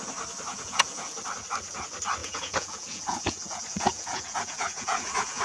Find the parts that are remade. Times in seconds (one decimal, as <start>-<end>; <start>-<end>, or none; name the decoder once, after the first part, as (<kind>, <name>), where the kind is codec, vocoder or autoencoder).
0.5-1.2 (vocoder, Vocos); 2.2-5.4